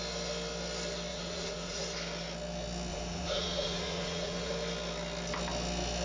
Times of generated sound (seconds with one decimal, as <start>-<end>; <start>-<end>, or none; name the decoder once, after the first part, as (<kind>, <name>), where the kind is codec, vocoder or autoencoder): 1.1-1.8 (vocoder, Vocos); 2.9-4.5